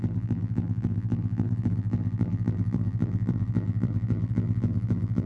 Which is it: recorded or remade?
remade